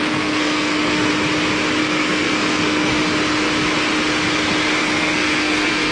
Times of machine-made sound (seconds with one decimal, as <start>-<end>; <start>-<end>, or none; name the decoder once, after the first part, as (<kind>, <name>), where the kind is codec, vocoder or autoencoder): 0.0-1.1 (codec, SNAC); 1.8-2.9; 4.8-5.9